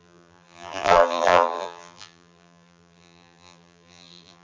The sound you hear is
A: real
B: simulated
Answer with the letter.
B